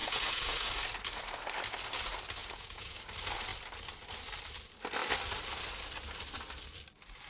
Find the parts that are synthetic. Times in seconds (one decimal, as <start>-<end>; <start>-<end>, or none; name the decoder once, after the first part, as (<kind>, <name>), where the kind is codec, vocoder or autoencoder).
0.0-0.7 (vocoder, Vocos); 2.4-3.0